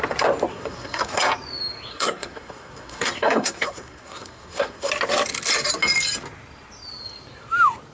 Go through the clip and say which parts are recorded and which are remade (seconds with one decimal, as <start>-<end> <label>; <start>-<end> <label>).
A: 0.0-0.5 recorded; 0.5-1.2 remade; 1.2-1.9 recorded; 1.9-4.9 remade; 4.9-7.9 recorded